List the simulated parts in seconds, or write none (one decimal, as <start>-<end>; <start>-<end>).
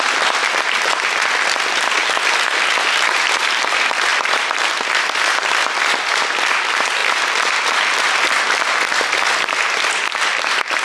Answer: none